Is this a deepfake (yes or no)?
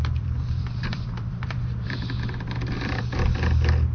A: yes